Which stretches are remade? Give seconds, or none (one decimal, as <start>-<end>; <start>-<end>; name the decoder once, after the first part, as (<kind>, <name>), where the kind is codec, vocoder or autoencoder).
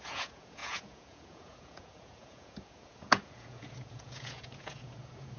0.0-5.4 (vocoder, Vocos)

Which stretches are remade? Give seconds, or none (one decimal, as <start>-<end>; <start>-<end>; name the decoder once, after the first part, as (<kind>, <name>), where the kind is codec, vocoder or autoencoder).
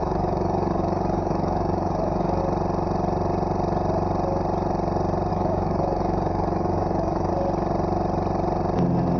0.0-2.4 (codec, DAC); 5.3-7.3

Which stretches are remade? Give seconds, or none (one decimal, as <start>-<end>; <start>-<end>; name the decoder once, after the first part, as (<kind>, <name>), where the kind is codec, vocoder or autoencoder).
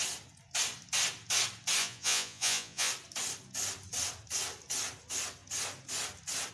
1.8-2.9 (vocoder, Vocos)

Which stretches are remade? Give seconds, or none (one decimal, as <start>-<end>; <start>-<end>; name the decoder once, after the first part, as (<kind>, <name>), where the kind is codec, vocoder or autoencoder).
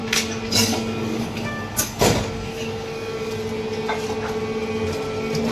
0.0-3.3 (codec, DAC)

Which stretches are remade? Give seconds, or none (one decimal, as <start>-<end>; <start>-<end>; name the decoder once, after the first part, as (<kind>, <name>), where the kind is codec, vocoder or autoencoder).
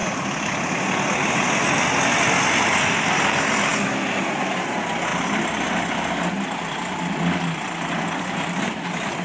none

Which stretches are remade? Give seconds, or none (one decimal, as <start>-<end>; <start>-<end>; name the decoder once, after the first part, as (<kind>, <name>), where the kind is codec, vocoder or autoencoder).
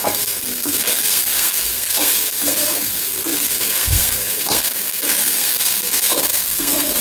0.0-7.0 (codec, SNAC)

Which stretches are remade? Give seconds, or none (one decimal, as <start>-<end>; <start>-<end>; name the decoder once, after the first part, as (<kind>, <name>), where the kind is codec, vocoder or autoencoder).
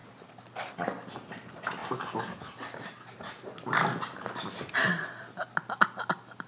0.0-0.7 (vocoder, BigVGAN v2)